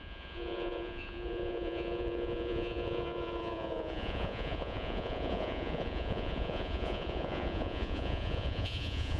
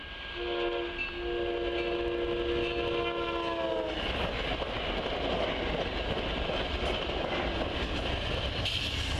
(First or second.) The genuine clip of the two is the second